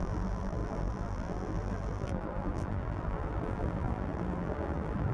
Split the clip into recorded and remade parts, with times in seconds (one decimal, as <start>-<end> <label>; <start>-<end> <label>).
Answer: 0.0-5.1 remade